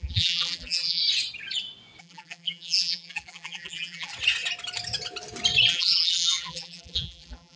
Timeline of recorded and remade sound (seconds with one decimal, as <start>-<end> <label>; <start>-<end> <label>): 0.0-1.0 remade; 1.0-2.0 recorded; 2.0-4.1 remade; 4.1-5.7 recorded; 5.7-7.6 remade

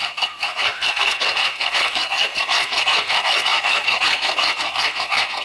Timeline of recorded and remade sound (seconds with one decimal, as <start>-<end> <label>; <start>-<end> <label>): 0.0-5.4 remade

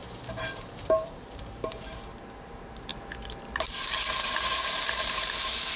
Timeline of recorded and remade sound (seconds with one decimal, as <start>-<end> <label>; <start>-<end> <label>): 0.0-2.9 remade; 2.9-3.6 recorded; 3.6-5.8 remade

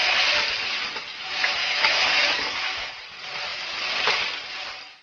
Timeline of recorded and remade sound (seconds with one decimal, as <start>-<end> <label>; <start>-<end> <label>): 0.0-1.6 recorded; 1.6-2.9 remade; 2.9-5.0 recorded